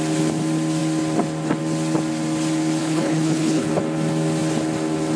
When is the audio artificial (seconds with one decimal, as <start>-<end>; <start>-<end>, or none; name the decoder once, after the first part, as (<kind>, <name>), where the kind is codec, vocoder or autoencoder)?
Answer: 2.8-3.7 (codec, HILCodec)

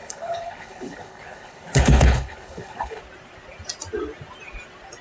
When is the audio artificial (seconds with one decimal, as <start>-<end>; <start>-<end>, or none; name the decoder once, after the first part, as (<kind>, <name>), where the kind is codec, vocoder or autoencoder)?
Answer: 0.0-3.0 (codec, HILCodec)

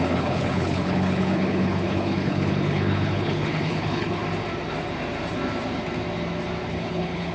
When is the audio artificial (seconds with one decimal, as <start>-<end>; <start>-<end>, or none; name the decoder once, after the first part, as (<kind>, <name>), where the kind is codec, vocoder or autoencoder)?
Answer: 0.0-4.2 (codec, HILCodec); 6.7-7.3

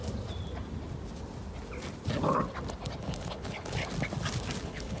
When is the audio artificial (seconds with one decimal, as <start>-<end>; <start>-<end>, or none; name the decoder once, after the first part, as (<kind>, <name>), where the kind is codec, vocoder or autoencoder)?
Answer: 3.0-3.8 (codec, HILCodec); 4.6-5.0

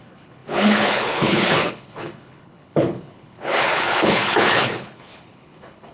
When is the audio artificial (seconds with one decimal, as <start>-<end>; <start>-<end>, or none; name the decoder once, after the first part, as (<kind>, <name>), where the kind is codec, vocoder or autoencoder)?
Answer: 0.0-5.9 (codec, HILCodec)

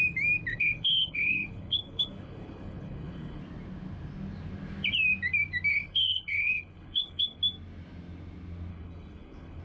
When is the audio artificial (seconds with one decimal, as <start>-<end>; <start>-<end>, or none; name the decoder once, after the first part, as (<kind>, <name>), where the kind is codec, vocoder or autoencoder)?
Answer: 0.5-3.4 (codec, HILCodec); 5.7-7.4; 8.7-9.6

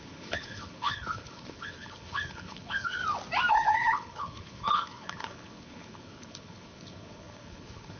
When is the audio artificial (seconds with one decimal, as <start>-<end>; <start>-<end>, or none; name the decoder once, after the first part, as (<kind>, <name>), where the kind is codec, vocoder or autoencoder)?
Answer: 0.0-3.0 (codec, HILCodec); 3.5-8.0

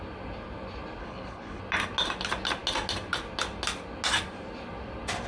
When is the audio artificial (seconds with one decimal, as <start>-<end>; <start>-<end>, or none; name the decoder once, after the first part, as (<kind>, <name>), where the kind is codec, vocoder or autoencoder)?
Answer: 1.0-1.6 (codec, HILCodec)